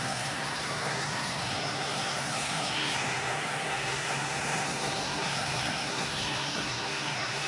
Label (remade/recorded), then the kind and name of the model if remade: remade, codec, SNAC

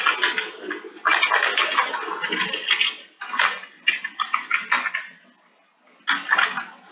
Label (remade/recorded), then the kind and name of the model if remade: recorded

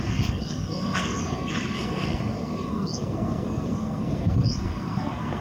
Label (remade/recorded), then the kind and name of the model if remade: remade, codec, SNAC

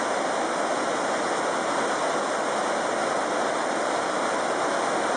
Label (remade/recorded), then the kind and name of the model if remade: recorded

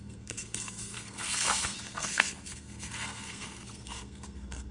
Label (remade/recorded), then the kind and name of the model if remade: remade, codec, SNAC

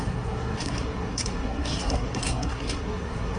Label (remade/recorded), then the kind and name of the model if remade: remade, codec, SNAC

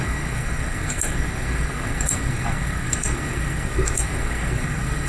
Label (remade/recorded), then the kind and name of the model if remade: remade, codec, SNAC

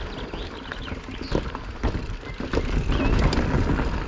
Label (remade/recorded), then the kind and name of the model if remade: recorded